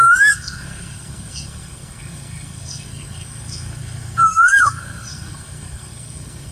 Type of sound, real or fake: fake